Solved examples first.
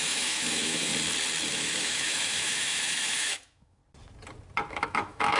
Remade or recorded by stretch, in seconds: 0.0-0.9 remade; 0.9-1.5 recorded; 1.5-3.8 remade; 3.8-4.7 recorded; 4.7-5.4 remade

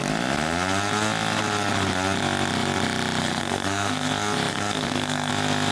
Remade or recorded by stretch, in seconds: 0.0-3.2 recorded; 3.2-4.1 remade; 4.1-4.5 recorded; 4.5-5.3 remade; 5.3-5.7 recorded

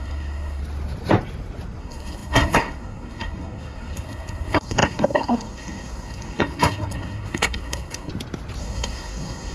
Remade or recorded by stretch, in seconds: 0.0-0.6 remade; 0.6-1.8 recorded; 1.8-8.1 remade; 8.1-8.6 recorded; 8.6-9.5 remade

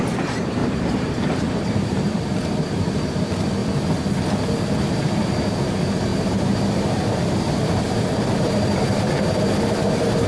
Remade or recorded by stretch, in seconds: 0.0-0.6 recorded; 0.6-2.1 remade; 2.1-6.1 recorded; 6.1-9.1 remade; 9.1-10.3 recorded